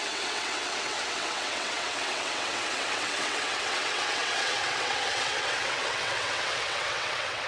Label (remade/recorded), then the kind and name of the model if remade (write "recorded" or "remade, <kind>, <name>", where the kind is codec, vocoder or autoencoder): remade, vocoder, WaveNeXt